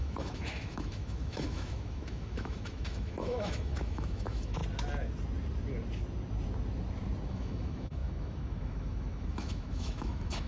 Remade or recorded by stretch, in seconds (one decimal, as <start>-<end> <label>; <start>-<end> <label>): 0.0-4.6 remade; 4.6-7.3 recorded; 7.3-10.5 remade